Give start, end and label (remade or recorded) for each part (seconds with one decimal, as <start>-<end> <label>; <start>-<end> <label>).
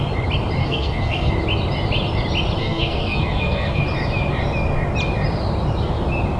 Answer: 0.0-0.6 recorded; 0.6-1.3 remade; 1.3-2.6 recorded; 2.6-3.8 remade; 3.8-6.4 recorded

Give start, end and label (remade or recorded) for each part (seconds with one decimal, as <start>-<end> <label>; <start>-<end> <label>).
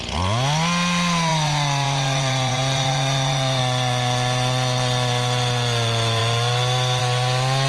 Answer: 0.0-1.3 recorded; 1.3-3.6 remade; 3.6-7.7 recorded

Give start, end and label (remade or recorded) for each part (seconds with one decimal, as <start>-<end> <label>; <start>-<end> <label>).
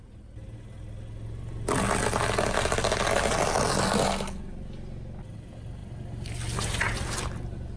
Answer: 0.0-7.8 recorded